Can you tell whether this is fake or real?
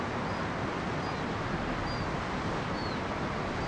real